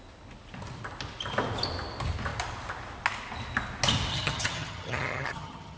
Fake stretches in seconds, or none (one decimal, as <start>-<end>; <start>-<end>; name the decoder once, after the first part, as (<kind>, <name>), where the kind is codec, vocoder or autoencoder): 4.1-5.8 (vocoder, HiFi-GAN)

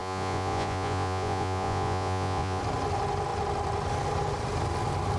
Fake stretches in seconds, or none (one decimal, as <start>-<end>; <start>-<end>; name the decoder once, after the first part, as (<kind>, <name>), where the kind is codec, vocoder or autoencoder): 0.0-2.6 (vocoder, Vocos)

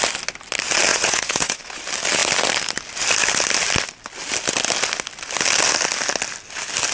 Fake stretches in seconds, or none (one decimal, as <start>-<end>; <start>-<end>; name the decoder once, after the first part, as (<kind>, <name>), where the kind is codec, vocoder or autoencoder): 0.9-1.6 (vocoder, Vocos)

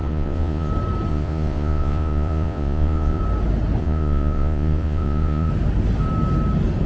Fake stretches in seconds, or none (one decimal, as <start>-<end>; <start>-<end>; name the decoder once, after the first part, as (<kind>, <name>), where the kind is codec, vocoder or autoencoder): 0.0-0.7 (vocoder, Vocos); 1.1-3.2; 3.8-5.5

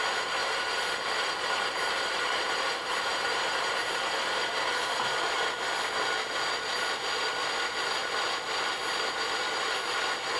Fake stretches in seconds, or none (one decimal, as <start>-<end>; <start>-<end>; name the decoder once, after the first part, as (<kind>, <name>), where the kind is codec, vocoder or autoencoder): 0.4-5.0 (vocoder, BigVGAN v2)

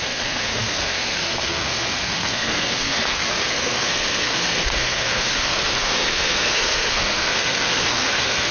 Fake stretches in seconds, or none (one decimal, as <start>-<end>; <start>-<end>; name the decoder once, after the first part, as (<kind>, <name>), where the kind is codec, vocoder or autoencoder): 0.0-8.5 (codec, SNAC)